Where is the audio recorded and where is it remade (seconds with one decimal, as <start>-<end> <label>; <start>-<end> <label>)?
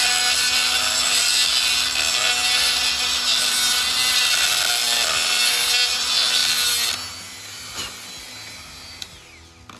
0.0-9.8 recorded